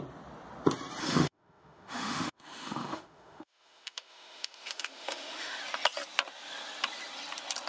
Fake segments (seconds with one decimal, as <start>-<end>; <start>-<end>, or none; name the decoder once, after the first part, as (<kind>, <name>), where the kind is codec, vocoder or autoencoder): 1.0-5.6 (autoencoder, DAC-VAE)